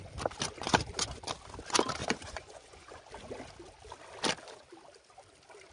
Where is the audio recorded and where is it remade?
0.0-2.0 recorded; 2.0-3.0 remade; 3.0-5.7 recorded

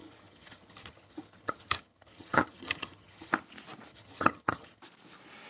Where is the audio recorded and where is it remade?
0.0-3.3 remade; 3.3-3.9 recorded; 3.9-4.8 remade; 4.8-5.5 recorded

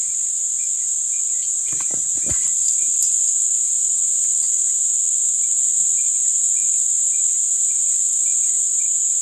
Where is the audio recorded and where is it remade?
0.0-9.2 recorded

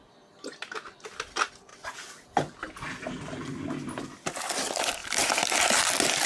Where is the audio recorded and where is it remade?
0.0-6.3 recorded

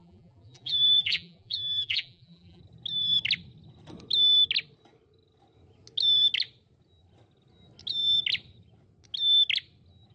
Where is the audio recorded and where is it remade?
0.0-2.6 remade; 2.6-10.1 recorded